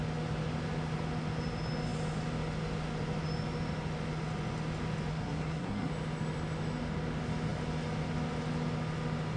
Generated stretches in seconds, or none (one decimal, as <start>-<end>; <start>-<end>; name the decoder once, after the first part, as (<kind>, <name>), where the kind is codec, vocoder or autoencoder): 5.1-5.9 (codec, SNAC)